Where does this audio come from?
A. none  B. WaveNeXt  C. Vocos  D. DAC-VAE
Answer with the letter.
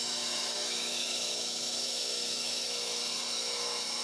D